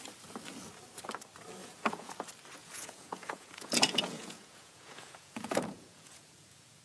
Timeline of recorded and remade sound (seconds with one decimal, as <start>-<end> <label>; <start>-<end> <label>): 0.0-1.6 recorded; 1.6-2.1 remade; 2.1-2.6 recorded; 2.6-6.8 remade